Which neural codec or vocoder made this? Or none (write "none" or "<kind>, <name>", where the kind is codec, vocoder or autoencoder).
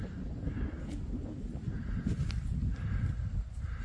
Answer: none